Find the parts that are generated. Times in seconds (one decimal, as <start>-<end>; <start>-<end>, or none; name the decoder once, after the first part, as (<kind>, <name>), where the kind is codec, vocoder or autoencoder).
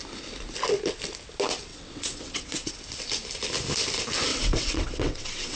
1.7-2.7 (vocoder, WaveNeXt); 4.3-5.6